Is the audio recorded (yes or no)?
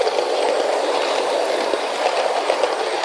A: yes